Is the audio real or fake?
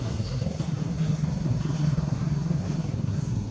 fake